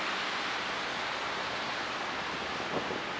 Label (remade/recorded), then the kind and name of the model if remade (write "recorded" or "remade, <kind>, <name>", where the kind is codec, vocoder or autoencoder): recorded